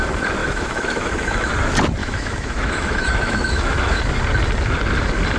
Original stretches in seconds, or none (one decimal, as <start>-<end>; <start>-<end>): 0.0-0.4; 1.5-2.0; 4.0-5.4